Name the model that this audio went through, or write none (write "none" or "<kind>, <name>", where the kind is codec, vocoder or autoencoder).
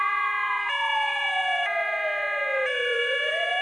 vocoder, Vocos